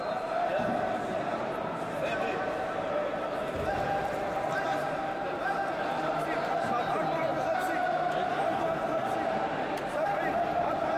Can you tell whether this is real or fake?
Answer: fake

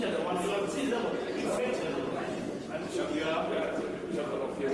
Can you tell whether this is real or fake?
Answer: fake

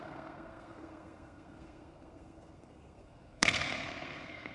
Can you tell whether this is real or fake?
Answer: fake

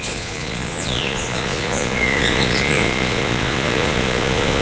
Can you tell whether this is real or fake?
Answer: fake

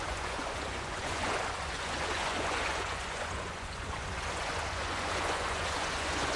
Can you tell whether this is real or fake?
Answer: fake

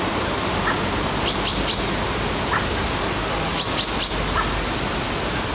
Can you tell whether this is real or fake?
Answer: real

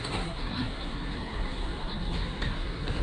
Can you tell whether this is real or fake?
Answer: fake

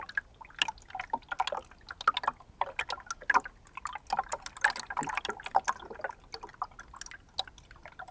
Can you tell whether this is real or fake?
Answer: real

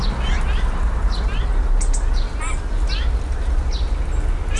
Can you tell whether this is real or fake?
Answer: real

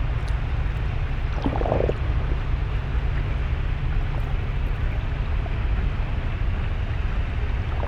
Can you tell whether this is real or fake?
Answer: real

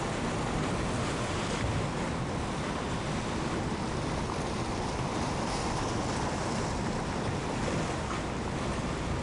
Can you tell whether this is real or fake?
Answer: real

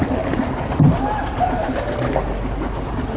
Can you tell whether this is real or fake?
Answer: real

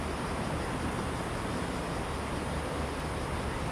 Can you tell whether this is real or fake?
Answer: real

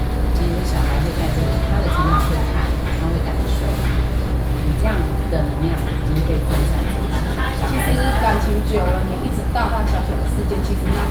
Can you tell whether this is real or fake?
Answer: real